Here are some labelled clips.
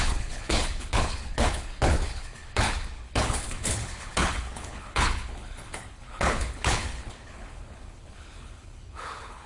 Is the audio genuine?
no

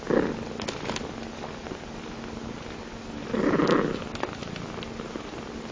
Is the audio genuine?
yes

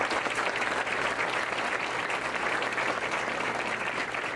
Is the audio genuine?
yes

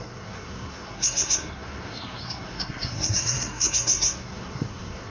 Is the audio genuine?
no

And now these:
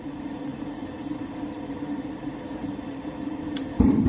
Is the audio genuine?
no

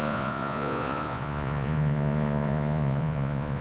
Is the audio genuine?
no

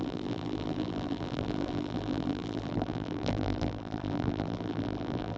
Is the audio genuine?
no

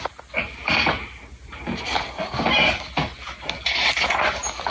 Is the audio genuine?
yes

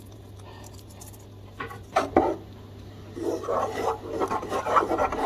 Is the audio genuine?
yes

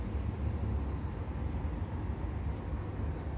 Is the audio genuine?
yes